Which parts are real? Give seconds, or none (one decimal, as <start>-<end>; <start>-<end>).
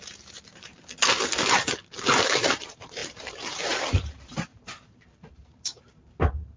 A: 0.7-2.5